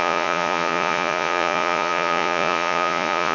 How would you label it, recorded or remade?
remade